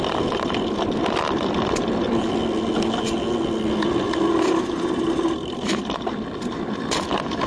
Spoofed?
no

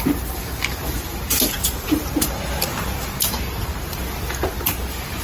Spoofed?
yes